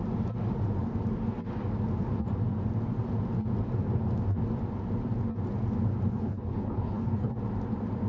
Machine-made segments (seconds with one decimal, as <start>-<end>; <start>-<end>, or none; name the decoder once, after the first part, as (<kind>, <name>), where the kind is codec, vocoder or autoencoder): 6.1-7.3 (codec, HILCodec)